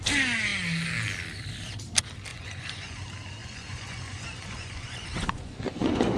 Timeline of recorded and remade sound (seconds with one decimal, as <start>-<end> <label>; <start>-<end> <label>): 0.0-2.3 recorded; 2.3-3.0 remade; 3.0-3.4 recorded; 3.4-6.2 remade